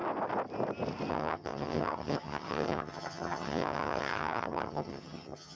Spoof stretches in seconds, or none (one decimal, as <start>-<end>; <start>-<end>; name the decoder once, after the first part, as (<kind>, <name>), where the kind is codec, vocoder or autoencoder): 1.1-5.6 (vocoder, HiFi-GAN)